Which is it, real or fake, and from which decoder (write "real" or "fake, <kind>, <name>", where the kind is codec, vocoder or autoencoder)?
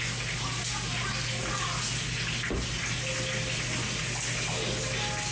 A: real